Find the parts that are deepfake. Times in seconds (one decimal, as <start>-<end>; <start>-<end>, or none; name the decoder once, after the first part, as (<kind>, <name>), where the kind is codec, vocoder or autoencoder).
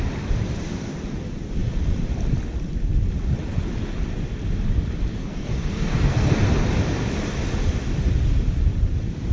5.2-6.3 (codec, SNAC)